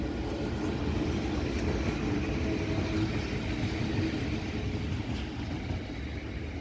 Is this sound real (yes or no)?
yes